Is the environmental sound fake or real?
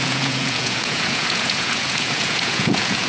fake